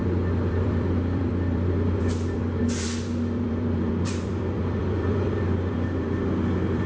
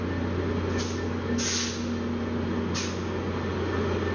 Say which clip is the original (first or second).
second